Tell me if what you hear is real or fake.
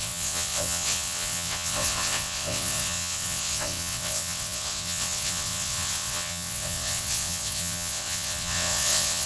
fake